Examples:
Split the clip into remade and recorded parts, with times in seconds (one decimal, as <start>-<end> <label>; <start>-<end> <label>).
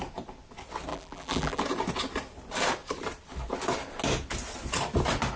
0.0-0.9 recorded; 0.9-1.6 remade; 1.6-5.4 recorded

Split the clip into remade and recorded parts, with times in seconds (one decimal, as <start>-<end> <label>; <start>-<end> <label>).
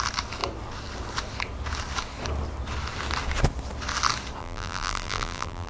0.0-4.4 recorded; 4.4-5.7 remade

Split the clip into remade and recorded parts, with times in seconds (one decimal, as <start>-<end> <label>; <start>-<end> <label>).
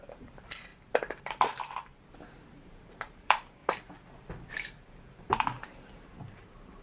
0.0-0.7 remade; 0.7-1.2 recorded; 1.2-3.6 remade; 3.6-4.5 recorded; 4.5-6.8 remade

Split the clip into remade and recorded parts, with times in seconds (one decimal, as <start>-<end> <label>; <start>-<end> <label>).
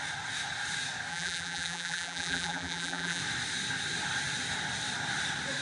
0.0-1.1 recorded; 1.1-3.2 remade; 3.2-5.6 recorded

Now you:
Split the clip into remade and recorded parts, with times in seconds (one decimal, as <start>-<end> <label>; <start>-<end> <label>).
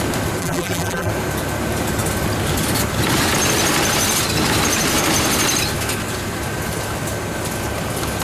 0.0-0.4 recorded; 0.4-1.1 remade; 1.1-8.2 recorded